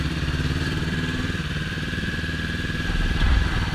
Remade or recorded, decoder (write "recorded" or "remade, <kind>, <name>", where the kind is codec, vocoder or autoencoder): remade, vocoder, BigVGAN v2